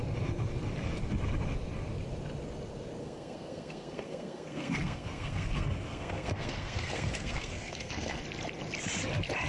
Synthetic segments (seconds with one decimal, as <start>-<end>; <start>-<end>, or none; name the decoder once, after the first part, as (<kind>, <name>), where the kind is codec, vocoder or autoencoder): 3.0-8.2 (codec, SNAC)